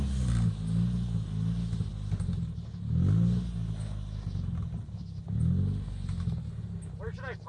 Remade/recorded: recorded